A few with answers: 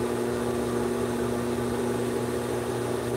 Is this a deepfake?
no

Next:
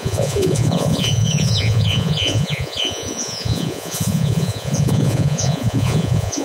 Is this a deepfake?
yes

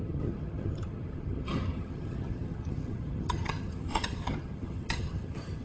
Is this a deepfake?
yes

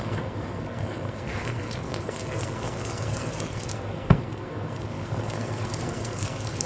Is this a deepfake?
yes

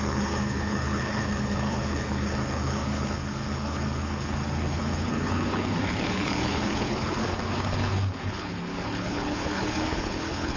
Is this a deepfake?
yes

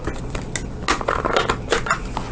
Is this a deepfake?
no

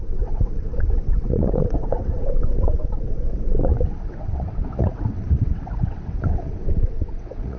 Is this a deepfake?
yes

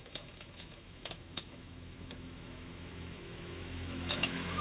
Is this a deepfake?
yes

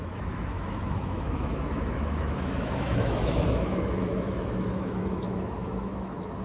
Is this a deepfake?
yes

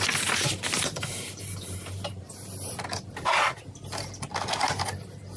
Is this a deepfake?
no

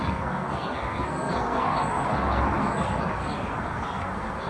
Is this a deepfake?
yes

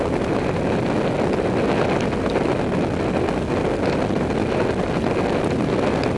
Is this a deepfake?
no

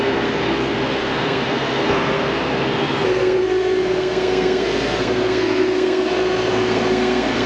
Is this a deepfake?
yes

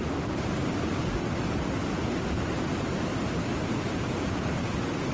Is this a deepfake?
no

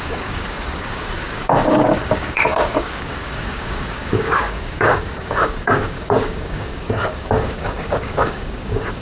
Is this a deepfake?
yes